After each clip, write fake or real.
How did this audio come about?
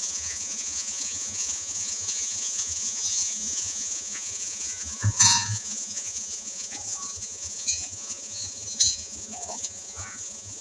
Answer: fake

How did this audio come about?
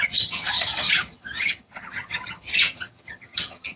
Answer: fake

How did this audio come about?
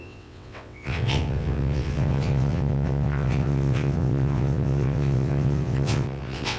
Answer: fake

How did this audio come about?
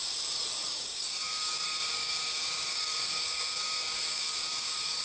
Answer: fake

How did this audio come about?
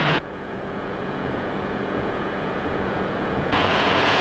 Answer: fake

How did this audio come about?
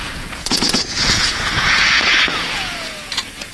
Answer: fake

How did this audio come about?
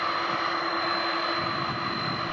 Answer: real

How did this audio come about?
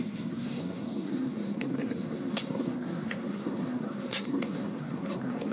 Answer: fake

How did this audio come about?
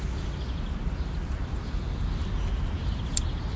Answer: real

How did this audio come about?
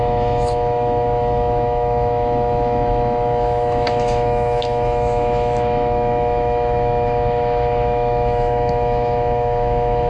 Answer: fake